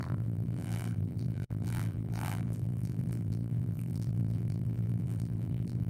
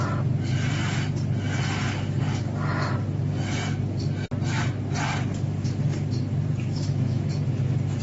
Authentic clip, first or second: second